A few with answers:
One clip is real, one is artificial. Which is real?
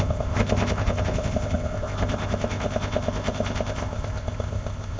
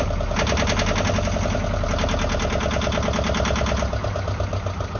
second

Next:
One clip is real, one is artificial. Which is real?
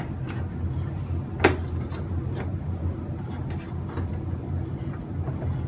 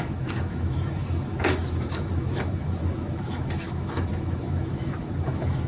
first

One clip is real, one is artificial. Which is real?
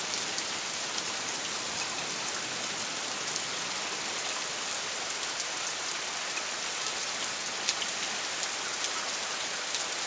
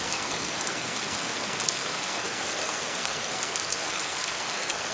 first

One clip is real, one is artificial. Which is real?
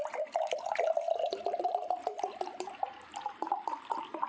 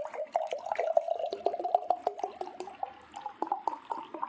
second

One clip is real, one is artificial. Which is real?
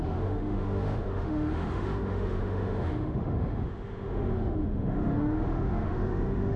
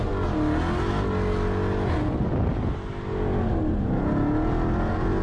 second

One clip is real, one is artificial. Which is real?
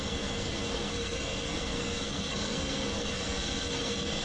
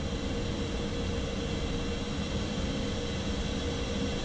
second